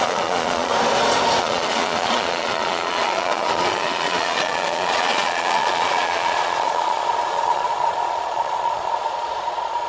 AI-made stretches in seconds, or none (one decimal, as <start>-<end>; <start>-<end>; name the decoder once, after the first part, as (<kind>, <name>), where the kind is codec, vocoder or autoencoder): 0.0-0.7 (vocoder, Vocos); 1.4-9.9